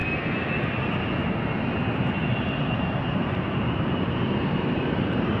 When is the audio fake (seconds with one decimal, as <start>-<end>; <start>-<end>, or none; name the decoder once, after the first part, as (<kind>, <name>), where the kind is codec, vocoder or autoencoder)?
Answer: 2.3-5.4 (vocoder, BigVGAN v2)